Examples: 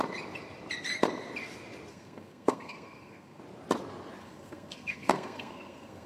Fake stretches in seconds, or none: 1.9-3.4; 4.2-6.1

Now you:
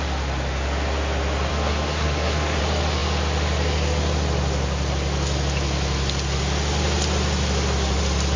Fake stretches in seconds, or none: 1.5-2.6